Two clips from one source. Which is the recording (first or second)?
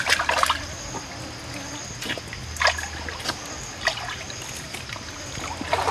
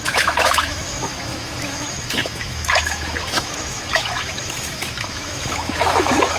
first